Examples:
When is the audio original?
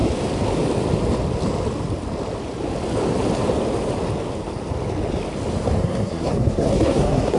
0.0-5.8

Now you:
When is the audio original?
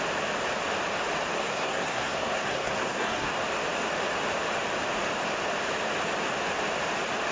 0.0-1.4; 3.3-7.3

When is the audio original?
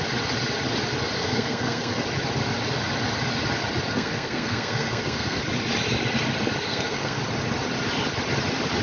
0.0-1.2; 2.0-3.9; 5.4-6.7; 7.2-8.8